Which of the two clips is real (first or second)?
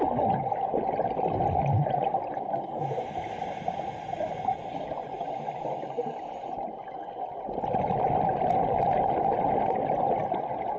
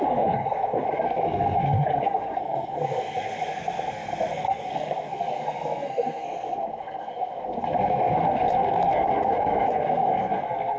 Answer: first